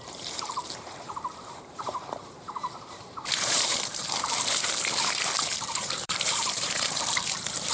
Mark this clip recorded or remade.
remade